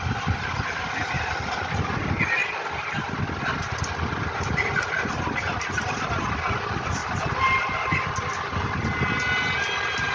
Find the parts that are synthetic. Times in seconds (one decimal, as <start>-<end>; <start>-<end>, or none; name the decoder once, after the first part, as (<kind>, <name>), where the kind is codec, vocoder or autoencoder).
none